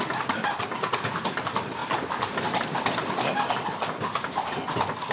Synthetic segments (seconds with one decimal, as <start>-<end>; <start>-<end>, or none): none